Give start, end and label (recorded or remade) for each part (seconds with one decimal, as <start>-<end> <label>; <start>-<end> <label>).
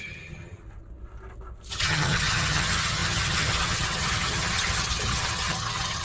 0.0-0.6 remade; 0.6-1.7 recorded; 1.7-6.0 remade